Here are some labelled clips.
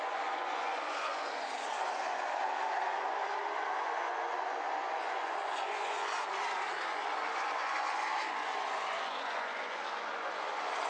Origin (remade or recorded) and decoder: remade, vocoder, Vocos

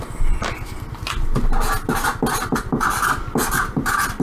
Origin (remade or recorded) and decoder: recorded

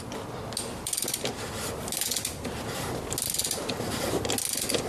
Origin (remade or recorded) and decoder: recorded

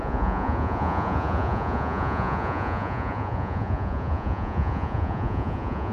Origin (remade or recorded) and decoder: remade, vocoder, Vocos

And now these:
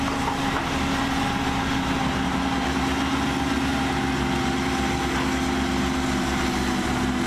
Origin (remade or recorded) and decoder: recorded